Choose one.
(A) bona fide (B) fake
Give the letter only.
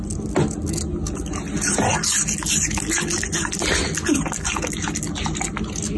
A